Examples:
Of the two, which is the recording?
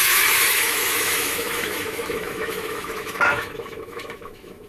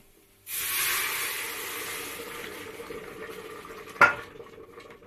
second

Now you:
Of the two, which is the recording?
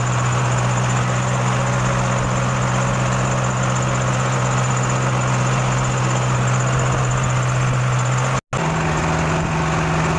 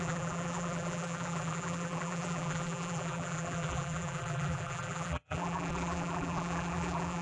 first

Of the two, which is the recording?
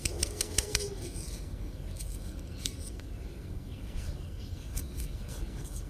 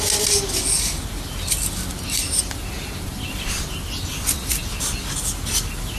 second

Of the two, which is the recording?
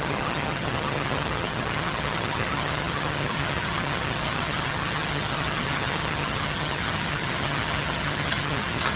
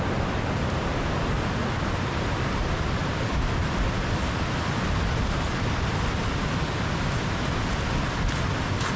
second